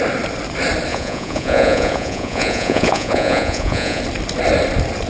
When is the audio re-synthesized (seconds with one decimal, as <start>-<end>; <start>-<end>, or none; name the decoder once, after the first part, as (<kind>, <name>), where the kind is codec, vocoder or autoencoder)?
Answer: 0.9-4.0 (vocoder, Vocos)